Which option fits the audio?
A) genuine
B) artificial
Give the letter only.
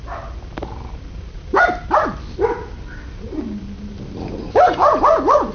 A